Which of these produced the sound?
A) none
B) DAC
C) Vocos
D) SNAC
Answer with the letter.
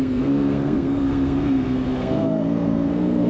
D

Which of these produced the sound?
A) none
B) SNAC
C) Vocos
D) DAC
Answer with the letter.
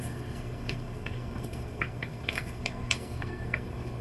B